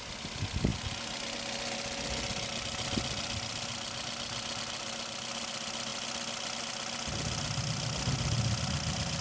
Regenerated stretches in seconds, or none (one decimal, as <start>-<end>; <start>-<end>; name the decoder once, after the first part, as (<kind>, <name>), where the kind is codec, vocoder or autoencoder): none